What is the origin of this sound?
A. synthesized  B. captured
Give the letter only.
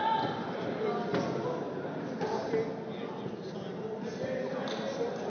B